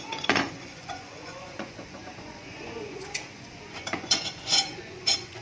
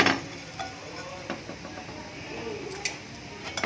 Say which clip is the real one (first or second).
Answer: second